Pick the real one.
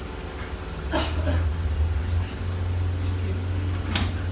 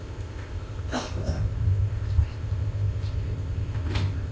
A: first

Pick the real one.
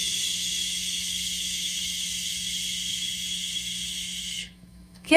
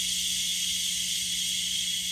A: second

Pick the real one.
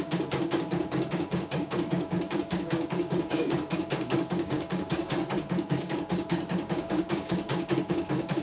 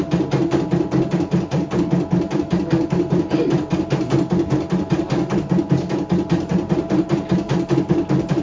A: second